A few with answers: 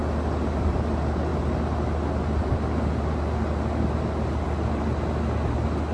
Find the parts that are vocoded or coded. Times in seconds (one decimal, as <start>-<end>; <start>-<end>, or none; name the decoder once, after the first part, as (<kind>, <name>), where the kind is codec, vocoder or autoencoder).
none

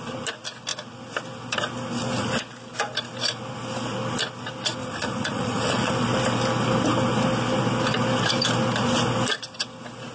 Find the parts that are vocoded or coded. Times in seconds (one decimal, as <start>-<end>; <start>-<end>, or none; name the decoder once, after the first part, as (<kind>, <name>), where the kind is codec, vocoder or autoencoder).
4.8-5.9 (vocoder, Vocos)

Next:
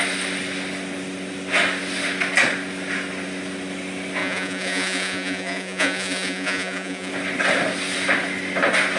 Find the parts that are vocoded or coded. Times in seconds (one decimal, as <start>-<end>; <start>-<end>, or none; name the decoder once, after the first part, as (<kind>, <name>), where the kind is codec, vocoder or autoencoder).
4.2-7.1 (vocoder, Vocos)